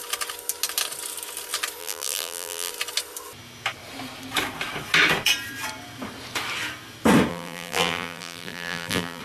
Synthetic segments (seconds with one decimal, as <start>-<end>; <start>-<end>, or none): 1.8-2.7; 7.3-9.2